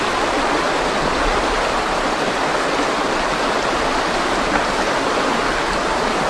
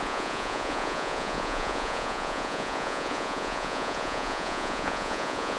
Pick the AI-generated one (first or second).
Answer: second